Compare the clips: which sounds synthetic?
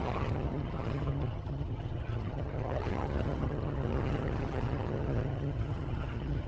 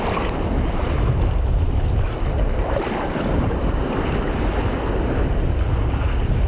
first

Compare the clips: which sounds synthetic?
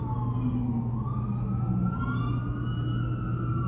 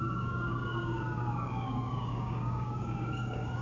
second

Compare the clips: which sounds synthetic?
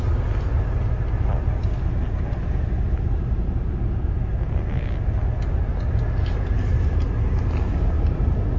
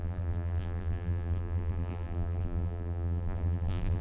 second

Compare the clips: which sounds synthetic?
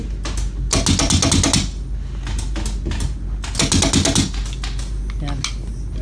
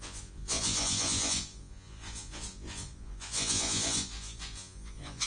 second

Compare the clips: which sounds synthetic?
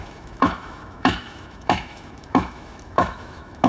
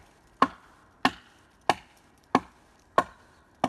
first